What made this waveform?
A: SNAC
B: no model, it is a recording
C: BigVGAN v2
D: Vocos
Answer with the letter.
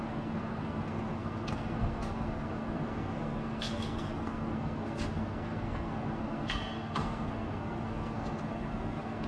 A